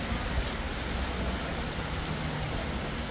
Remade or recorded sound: recorded